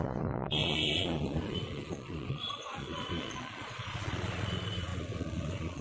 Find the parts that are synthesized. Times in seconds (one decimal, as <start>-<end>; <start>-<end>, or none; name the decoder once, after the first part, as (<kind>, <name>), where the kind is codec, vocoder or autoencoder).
0.0-5.8 (vocoder, Vocos)